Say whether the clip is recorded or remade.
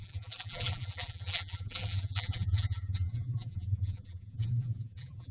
remade